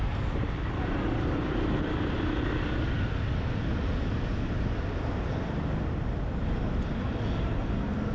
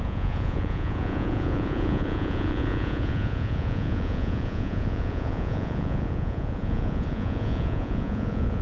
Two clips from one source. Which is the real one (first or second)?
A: first